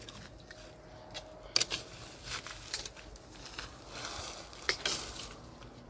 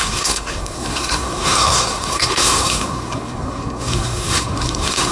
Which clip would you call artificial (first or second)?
second